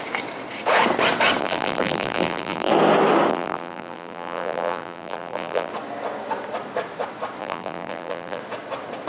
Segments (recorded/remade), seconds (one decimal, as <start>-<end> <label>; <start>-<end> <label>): 0.0-1.4 recorded; 1.4-2.7 remade; 2.7-3.3 recorded; 3.3-5.7 remade; 5.7-7.4 recorded; 7.4-8.4 remade; 8.4-9.1 recorded